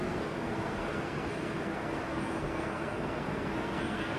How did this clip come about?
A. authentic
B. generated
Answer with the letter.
B